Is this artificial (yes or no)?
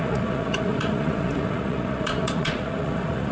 yes